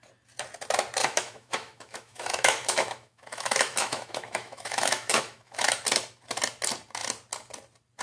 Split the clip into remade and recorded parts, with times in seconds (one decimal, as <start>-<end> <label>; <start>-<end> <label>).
0.0-1.0 recorded; 1.0-5.6 remade; 5.6-8.0 recorded